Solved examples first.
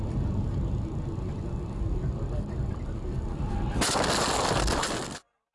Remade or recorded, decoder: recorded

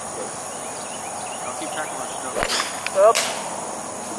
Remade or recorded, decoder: recorded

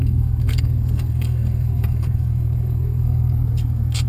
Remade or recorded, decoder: remade, codec, SNAC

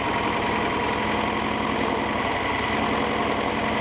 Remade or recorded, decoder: recorded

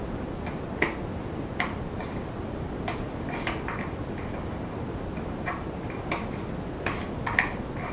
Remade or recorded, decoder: recorded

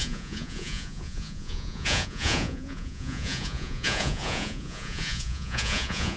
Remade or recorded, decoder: remade, vocoder, Vocos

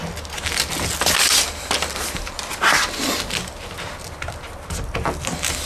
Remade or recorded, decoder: recorded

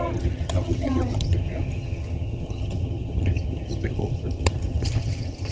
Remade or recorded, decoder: remade, vocoder, HiFi-GAN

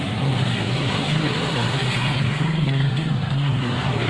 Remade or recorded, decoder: remade, codec, SNAC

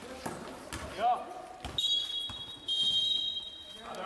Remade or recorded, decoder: recorded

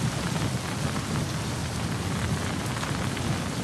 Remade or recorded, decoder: recorded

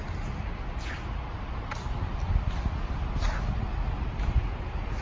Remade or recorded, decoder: recorded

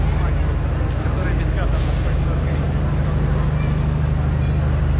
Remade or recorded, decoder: recorded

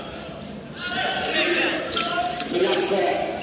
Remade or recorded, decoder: recorded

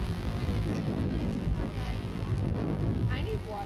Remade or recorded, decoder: remade, vocoder, BigVGAN v2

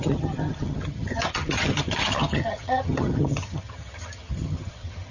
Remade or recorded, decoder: remade, vocoder, HiFi-GAN